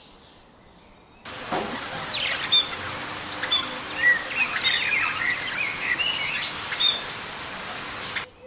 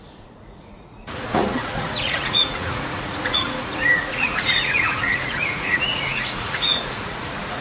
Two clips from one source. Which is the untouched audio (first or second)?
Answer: first